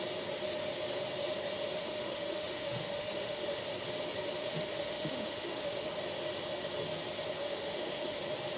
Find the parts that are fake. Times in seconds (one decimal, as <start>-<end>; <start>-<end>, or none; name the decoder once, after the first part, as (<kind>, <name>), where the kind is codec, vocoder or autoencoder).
1.8-3.6 (autoencoder, DAC-VAE); 4.4-5.9; 7.4-8.2